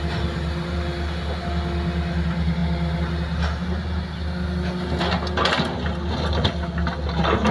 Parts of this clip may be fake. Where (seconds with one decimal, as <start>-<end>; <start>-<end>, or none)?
none